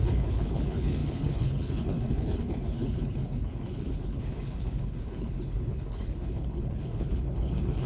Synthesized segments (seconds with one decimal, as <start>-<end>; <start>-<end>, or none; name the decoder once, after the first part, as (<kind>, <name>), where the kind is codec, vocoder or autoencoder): 0.0-7.9 (codec, HILCodec)